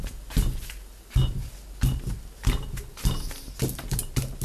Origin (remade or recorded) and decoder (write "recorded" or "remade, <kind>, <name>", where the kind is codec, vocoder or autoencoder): recorded